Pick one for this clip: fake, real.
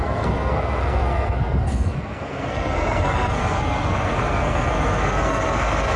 fake